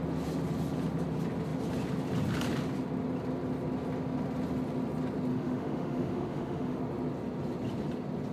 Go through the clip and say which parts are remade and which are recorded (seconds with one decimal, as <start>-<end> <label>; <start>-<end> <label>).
0.0-5.3 recorded; 5.3-6.8 remade; 6.8-8.3 recorded